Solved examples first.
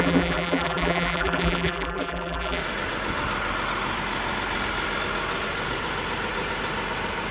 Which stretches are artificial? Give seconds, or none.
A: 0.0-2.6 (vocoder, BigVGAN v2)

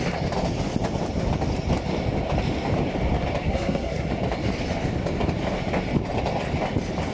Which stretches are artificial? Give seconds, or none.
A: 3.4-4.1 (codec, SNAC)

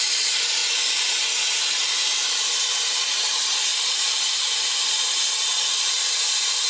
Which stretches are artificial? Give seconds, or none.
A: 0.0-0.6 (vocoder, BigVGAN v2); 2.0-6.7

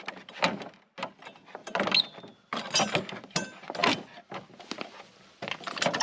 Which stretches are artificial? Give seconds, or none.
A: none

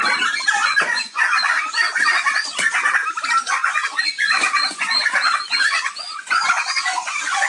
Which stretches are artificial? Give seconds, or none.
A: 0.6-2.9 (vocoder, Vocos); 3.4-7.5

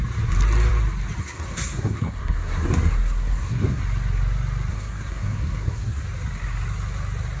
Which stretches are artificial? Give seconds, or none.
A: 1.2-3.8 (codec, SNAC); 4.7-6.0

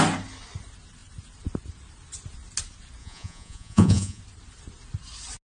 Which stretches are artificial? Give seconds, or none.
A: 3.0-4.2 (vocoder, Vocos)